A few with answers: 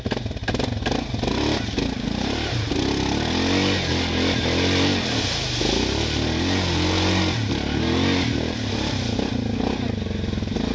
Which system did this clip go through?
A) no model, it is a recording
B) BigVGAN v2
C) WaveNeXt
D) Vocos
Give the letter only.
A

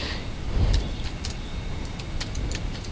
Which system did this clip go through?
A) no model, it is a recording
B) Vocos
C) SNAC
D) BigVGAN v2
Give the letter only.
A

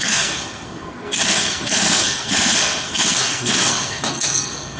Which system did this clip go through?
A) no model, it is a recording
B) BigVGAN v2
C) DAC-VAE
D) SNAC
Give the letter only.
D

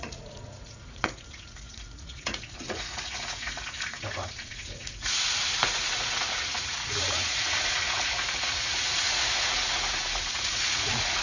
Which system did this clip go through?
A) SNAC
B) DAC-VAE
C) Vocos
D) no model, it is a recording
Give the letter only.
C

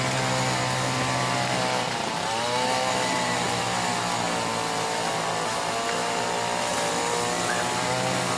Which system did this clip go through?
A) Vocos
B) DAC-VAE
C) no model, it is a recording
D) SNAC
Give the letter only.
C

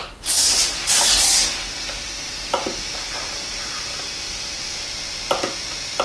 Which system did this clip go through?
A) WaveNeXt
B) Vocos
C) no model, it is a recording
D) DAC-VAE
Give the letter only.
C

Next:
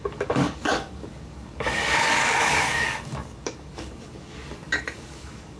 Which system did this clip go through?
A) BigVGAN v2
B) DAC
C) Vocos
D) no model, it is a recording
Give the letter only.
B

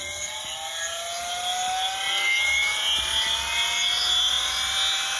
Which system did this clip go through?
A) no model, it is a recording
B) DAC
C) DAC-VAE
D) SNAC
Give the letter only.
A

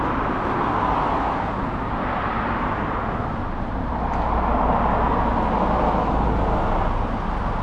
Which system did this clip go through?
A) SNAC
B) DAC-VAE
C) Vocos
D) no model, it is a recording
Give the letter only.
D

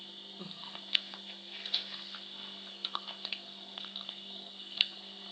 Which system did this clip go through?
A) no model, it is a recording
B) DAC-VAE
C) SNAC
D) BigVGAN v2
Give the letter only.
C